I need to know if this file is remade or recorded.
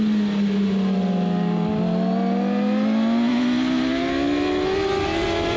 recorded